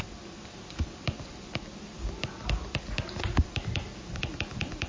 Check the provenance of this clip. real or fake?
real